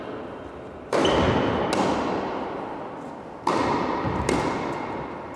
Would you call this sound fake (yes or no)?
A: no